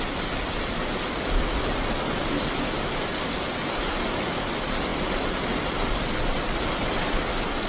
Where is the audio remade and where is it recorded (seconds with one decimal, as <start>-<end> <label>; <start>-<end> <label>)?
0.0-7.7 recorded